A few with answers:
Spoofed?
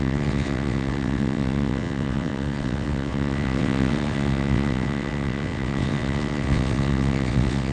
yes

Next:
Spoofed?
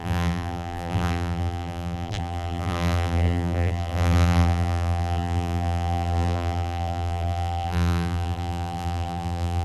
yes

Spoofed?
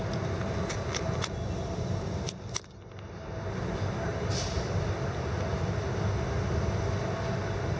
no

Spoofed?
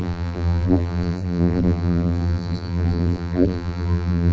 yes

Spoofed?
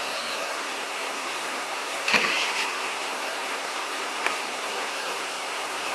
yes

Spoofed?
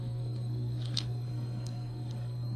yes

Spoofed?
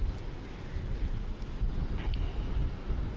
no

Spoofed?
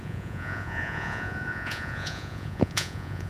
yes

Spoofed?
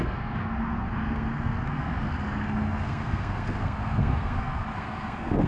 yes